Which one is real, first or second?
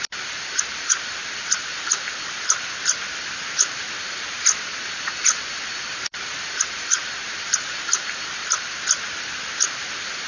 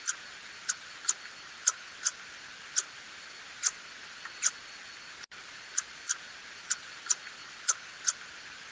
second